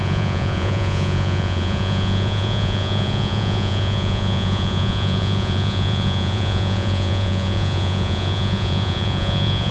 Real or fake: fake